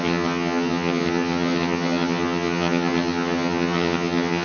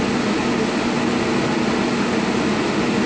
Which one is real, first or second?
second